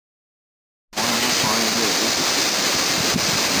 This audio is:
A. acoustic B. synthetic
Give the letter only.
A